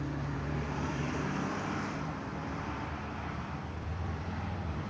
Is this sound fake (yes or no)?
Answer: yes